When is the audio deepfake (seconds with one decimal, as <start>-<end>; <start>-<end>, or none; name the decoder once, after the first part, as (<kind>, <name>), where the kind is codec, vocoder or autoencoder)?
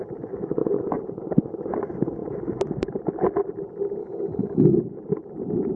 4.0-4.8 (codec, DAC)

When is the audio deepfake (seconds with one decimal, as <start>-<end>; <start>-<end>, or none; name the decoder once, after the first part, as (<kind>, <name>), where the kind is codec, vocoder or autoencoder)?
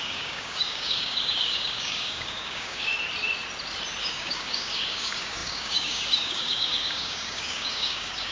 0.0-2.9 (codec, DAC); 4.0-8.3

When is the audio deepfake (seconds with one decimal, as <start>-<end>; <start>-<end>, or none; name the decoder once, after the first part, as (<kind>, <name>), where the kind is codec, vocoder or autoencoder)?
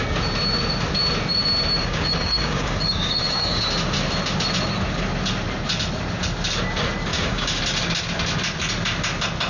1.8-3.6 (codec, DAC); 7.1-7.6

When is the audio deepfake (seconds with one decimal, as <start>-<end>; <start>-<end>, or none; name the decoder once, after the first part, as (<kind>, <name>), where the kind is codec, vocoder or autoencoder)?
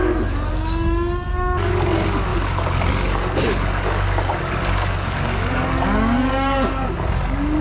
0.0-7.6 (codec, DAC)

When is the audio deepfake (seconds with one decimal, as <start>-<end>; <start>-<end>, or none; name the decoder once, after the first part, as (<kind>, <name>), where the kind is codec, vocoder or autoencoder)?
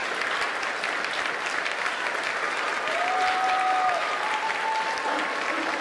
none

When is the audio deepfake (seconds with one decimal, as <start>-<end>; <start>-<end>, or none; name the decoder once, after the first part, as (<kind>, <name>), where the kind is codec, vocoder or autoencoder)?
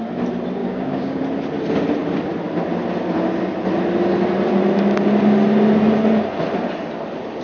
0.6-1.2 (codec, DAC)